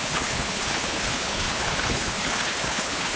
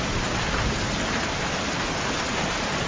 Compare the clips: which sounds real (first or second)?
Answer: second